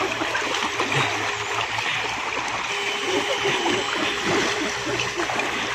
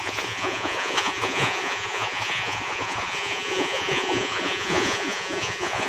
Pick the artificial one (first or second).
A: second